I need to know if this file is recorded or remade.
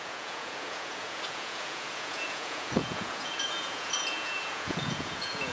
remade